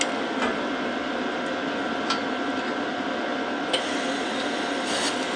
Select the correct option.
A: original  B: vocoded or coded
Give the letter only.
A